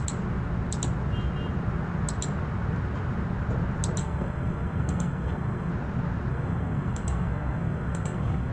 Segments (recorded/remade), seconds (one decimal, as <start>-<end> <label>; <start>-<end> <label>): 0.0-4.0 recorded; 4.0-5.7 remade; 5.7-6.3 recorded; 6.3-8.5 remade